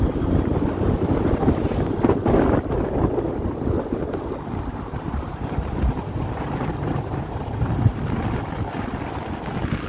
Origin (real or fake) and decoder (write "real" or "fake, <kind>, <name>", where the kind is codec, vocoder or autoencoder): real